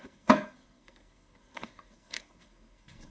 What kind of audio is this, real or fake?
fake